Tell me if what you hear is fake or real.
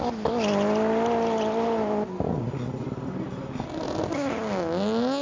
real